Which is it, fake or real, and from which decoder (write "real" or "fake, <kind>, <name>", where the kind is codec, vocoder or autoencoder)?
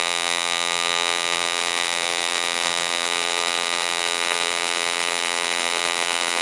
fake, vocoder, BigVGAN v2